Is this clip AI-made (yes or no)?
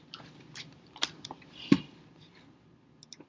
no